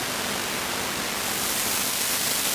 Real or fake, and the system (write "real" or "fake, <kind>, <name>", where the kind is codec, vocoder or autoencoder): real